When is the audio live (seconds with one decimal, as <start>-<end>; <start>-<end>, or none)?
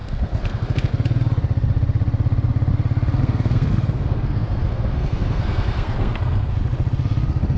0.9-3.2; 6.5-7.6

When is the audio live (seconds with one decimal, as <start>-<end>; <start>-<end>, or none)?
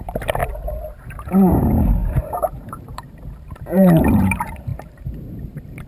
0.4-0.9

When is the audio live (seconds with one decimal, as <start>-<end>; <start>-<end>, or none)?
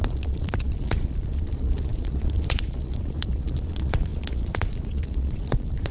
none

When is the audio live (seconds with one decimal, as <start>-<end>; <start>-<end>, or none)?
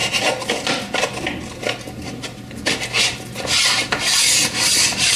0.0-5.2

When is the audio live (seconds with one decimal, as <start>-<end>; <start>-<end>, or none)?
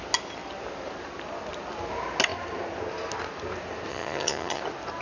0.0-3.9; 4.6-5.0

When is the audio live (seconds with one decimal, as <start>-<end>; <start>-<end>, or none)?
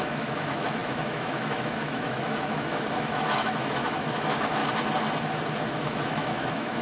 4.6-5.7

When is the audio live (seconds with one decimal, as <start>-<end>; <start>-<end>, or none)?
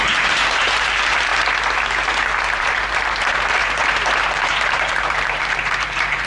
1.3-2.6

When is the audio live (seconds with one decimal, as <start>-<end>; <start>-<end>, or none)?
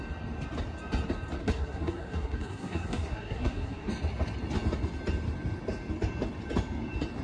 0.0-1.4; 3.9-7.2